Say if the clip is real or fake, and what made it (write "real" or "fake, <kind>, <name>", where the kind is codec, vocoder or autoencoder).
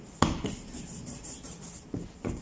real